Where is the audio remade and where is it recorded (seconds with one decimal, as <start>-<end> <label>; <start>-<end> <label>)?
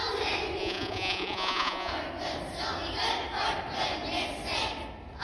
0.0-0.6 recorded; 0.6-1.9 remade; 1.9-5.2 recorded